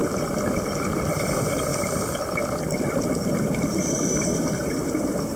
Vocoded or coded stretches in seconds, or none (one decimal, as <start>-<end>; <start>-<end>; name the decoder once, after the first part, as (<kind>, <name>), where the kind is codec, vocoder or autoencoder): 0.0-0.6 (vocoder, BigVGAN v2); 4.3-5.4